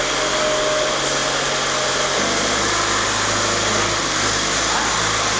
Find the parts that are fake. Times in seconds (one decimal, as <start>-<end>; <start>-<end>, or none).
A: none